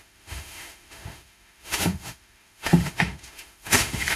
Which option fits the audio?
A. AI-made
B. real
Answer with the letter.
A